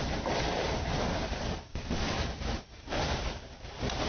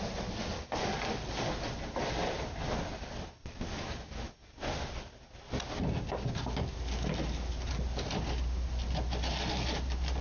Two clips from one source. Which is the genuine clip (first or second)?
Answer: second